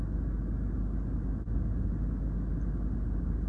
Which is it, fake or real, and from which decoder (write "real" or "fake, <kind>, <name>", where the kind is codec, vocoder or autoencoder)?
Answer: real